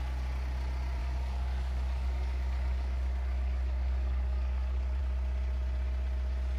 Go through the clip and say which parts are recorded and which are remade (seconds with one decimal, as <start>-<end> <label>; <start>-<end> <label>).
0.0-1.0 recorded; 1.0-5.0 remade; 5.0-6.6 recorded